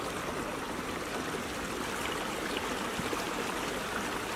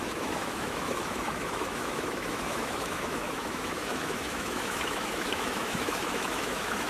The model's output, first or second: second